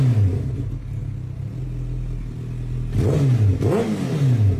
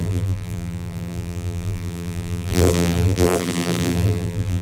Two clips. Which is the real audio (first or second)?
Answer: first